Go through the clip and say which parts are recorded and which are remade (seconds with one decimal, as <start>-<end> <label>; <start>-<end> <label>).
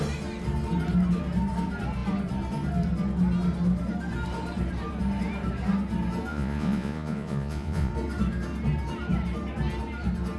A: 0.0-6.3 recorded; 6.3-7.9 remade; 7.9-10.4 recorded